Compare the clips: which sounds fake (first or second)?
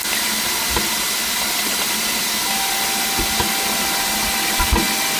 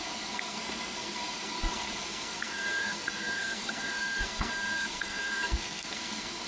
second